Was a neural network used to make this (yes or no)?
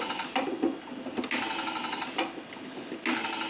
no